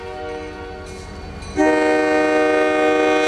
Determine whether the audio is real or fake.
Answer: real